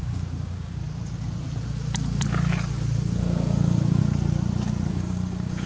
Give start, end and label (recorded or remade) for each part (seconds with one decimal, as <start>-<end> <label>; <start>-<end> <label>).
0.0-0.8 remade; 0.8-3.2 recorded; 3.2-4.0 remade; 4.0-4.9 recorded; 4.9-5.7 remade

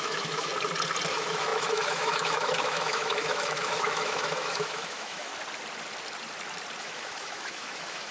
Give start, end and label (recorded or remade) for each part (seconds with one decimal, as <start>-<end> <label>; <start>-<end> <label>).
0.0-0.5 remade; 0.5-1.1 recorded; 1.1-5.3 remade; 5.3-6.8 recorded; 6.8-8.1 remade

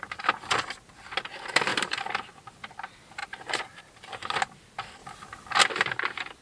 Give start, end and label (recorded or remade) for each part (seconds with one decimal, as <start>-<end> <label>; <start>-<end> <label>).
0.0-1.7 recorded; 1.7-2.4 remade; 2.4-3.2 recorded; 3.2-3.8 remade; 3.8-6.4 recorded

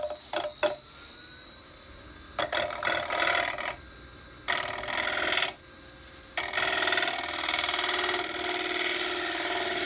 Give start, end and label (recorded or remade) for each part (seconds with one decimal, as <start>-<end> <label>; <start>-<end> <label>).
0.0-9.9 recorded

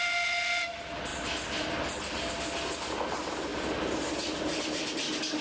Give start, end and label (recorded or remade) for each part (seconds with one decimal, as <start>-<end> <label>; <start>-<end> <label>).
0.0-5.4 recorded

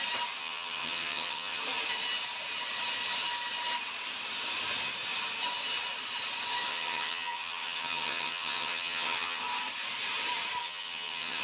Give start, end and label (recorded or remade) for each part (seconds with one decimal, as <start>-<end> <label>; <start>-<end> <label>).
0.0-0.4 recorded; 0.4-1.6 remade; 1.6-6.7 recorded; 6.7-9.4 remade; 9.4-10.6 recorded; 10.6-11.4 remade